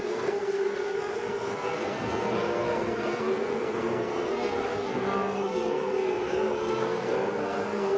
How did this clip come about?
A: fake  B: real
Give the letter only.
A